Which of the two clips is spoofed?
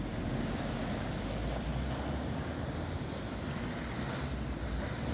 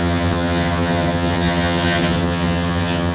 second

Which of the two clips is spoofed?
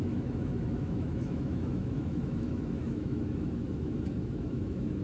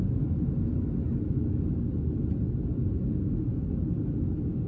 first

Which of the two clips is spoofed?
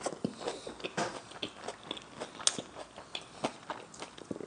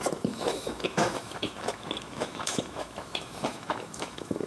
second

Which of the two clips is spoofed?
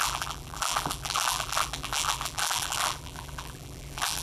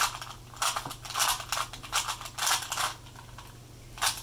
first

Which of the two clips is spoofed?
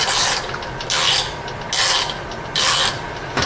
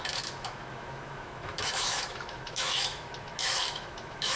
second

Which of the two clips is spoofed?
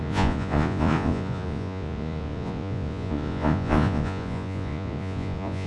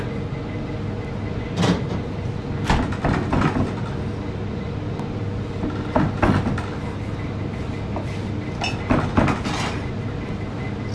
first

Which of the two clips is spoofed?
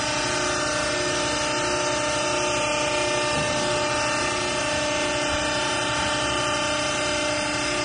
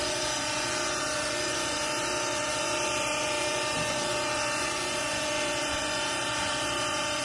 second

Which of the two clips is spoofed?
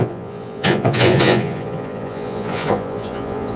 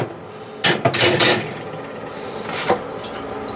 first